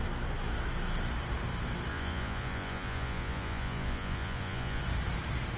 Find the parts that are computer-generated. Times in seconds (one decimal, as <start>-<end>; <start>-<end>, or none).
1.9-4.8